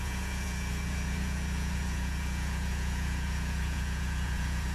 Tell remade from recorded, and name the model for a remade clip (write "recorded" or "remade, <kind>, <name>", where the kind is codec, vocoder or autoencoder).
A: remade, vocoder, Vocos